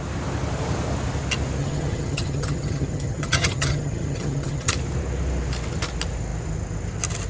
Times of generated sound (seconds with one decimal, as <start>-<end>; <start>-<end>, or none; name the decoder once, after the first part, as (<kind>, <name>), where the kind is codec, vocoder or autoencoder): 1.6-4.7 (vocoder, HiFi-GAN)